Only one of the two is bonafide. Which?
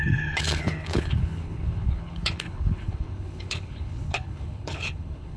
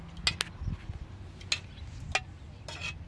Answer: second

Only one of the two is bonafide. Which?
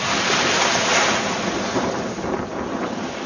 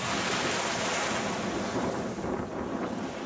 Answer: second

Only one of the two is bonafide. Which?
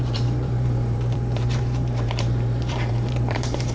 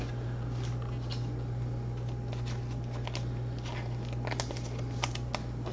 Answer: second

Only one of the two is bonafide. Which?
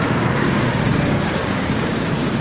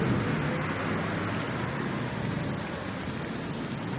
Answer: second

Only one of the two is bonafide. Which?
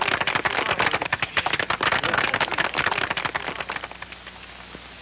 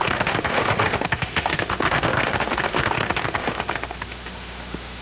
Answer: first